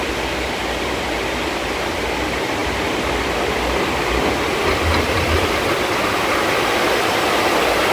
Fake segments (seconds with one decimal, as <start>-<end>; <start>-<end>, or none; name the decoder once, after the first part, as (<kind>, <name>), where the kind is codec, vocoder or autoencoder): none